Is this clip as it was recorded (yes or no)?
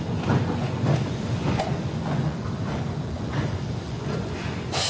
no